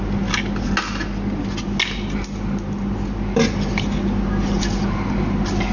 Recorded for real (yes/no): yes